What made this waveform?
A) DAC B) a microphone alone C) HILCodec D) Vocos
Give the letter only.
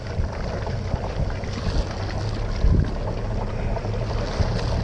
B